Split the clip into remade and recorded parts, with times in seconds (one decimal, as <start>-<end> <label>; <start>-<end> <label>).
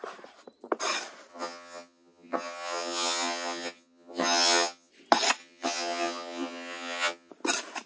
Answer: 0.0-1.3 recorded; 1.3-4.9 remade; 4.9-5.4 recorded; 5.4-7.3 remade; 7.3-7.9 recorded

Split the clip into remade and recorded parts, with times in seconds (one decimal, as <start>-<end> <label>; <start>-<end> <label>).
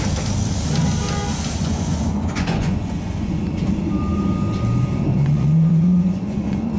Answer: 0.0-1.6 recorded; 1.6-3.8 remade; 3.8-5.1 recorded; 5.1-6.8 remade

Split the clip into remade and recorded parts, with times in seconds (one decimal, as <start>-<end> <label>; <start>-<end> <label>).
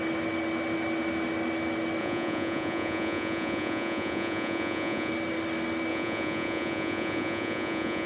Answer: 0.0-2.0 recorded; 2.0-5.1 remade; 5.1-5.9 recorded; 5.9-8.1 remade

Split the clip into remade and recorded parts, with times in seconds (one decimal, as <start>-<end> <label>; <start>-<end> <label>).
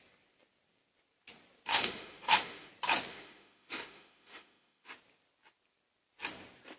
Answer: 0.0-1.7 recorded; 1.7-2.7 remade; 2.7-3.1 recorded; 3.1-4.9 remade; 4.9-6.8 recorded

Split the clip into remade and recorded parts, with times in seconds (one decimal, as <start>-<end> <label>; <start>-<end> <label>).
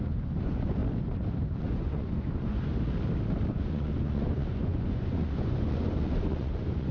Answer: 0.0-0.8 remade; 0.8-1.6 recorded; 1.6-2.7 remade; 2.7-3.5 recorded; 3.5-6.9 remade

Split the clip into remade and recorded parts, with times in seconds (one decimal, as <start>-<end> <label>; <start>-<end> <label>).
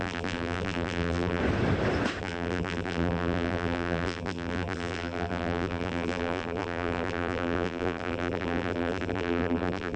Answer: 0.0-1.4 remade; 1.4-2.2 recorded; 2.2-10.0 remade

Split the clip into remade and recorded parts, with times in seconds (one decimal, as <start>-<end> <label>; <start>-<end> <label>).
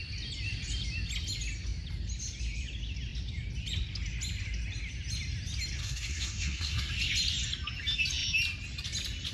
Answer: 0.0-5.8 recorded; 5.8-6.9 remade; 6.9-9.3 recorded